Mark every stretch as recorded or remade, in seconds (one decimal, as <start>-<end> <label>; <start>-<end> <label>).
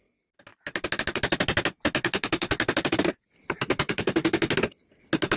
0.0-5.4 recorded